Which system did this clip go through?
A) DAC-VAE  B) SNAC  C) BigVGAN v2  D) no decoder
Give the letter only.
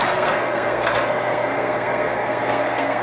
B